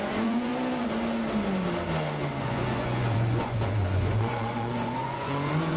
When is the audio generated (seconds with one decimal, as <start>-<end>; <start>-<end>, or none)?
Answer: 0.0-0.5; 2.4-5.8